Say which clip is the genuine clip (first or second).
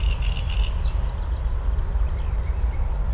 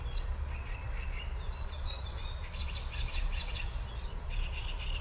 first